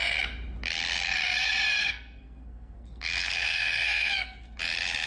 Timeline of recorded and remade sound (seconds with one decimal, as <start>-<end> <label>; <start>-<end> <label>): 0.0-1.8 recorded; 1.8-4.6 remade; 4.6-5.1 recorded